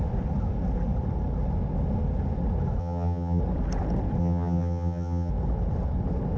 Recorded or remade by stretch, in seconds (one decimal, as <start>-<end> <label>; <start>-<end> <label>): 0.0-2.8 recorded; 2.8-3.4 remade; 3.4-4.2 recorded; 4.2-5.3 remade; 5.3-6.4 recorded